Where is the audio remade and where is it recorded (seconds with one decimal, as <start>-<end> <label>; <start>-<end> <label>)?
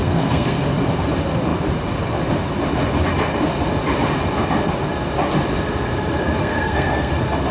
0.0-0.6 remade; 0.6-6.4 recorded; 6.4-7.1 remade; 7.1-7.5 recorded